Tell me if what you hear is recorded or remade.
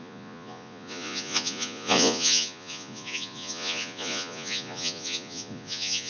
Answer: remade